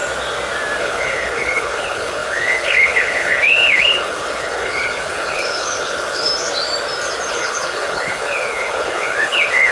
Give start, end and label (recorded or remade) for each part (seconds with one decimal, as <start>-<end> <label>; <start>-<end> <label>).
0.0-0.8 recorded; 0.8-6.3 remade; 6.3-7.3 recorded; 7.3-9.7 remade